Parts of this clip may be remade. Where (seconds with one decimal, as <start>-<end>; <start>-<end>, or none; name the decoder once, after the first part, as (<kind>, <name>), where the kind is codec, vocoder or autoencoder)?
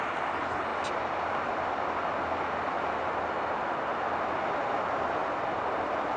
5.2-6.2 (vocoder, BigVGAN v2)